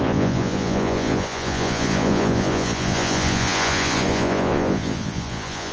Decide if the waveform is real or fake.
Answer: fake